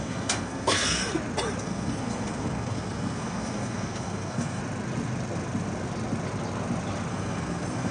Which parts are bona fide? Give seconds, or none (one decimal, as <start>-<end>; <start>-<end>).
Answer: 1.0-1.6; 4.6-7.1